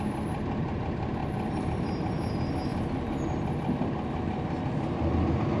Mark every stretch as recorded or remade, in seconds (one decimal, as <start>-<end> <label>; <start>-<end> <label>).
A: 0.0-5.6 recorded